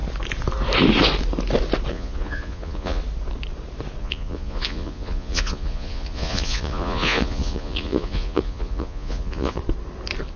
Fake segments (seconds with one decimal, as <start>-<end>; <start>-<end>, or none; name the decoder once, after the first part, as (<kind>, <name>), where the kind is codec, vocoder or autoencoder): 1.9-3.0 (vocoder, Vocos); 4.0-9.6